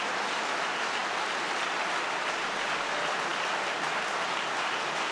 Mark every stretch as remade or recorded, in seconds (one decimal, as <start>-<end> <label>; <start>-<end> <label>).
0.0-5.1 recorded